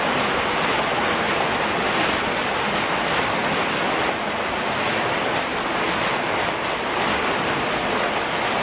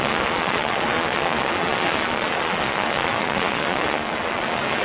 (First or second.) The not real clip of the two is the second